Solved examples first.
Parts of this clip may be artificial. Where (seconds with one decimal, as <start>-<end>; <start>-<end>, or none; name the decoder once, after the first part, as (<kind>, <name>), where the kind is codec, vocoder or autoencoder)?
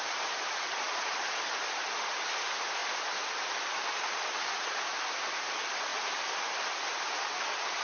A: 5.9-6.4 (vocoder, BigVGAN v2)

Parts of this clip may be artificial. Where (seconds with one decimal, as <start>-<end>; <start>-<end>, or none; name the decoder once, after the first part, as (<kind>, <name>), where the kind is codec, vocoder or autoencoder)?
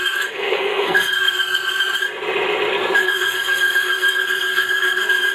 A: 0.0-1.8 (codec, SNAC); 3.0-5.3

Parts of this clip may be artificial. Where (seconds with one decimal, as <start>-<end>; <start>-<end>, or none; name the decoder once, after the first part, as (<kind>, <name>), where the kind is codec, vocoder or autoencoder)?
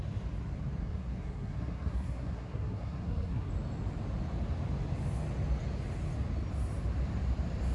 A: 0.8-3.5 (codec, SNAC)